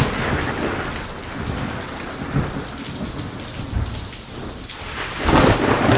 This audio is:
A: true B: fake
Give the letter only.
A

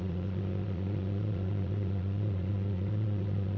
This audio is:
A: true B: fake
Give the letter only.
B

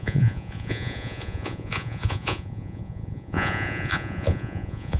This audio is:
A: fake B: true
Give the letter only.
A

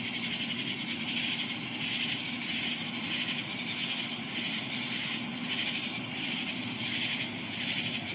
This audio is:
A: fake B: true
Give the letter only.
B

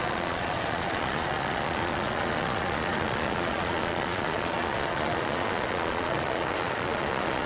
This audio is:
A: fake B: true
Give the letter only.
A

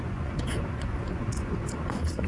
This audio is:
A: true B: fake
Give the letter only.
B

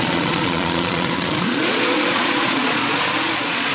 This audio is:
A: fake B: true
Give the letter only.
A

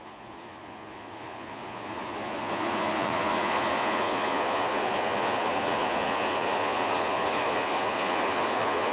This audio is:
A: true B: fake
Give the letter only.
B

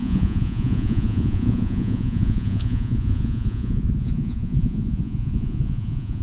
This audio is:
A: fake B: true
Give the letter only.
A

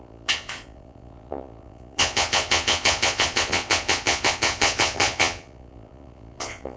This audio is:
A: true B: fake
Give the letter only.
B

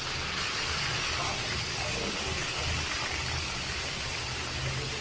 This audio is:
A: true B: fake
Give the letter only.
A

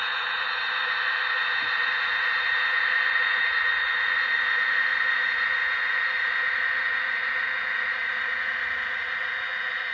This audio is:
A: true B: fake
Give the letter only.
B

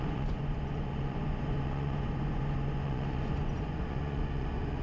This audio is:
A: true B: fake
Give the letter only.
B